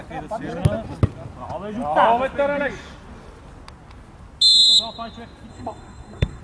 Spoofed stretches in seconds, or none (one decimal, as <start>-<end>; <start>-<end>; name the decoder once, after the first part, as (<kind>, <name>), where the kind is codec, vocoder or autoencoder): 5.5-6.4 (codec, SNAC)